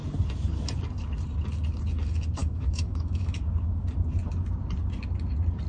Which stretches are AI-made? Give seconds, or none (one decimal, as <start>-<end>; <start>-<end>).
2.4-3.4